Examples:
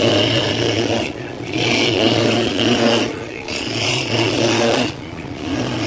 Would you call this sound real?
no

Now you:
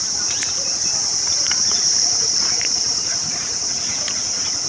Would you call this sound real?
no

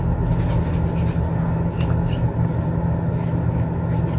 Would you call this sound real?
yes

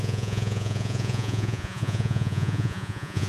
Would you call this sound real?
no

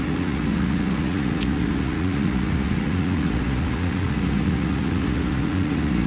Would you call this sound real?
no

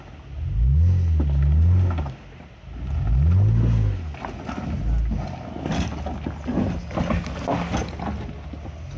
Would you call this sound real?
yes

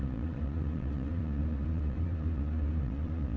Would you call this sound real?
no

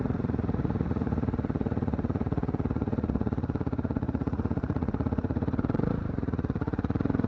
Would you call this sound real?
no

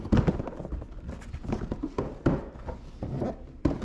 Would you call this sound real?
yes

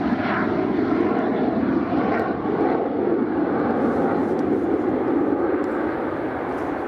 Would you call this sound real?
yes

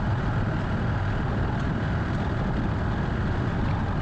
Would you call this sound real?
yes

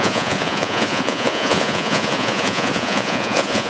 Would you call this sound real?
no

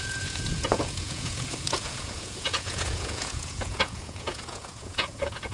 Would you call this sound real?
no